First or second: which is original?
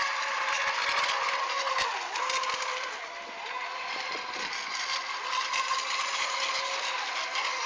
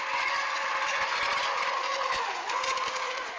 first